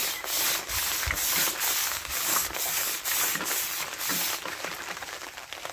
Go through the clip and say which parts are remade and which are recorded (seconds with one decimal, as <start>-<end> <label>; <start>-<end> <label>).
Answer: 0.0-1.8 recorded; 1.8-3.0 remade; 3.0-5.7 recorded